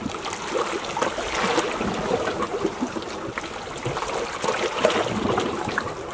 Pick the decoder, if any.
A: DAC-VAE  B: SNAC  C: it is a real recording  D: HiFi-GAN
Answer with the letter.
C